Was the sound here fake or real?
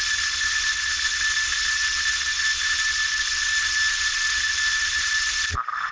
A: real